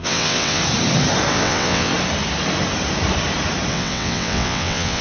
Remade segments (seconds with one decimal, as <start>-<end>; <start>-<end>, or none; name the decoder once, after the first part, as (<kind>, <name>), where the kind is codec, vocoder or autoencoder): 0.0-0.6 (vocoder, WaveNeXt); 1.3-1.9; 3.7-5.0

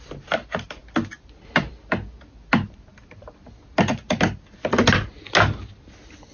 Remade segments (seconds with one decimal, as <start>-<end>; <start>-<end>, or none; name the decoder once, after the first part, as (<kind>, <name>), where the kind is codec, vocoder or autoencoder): none

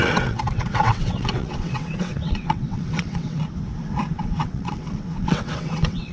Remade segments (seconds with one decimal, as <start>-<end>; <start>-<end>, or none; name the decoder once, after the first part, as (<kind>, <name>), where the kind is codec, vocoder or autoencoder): 0.0-3.4 (vocoder, WaveNeXt); 4.1-6.1